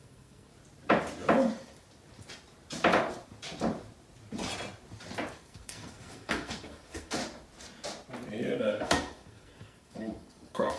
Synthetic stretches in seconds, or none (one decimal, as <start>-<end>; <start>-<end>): 0.0-0.5; 5.4-7.2; 8.6-10.8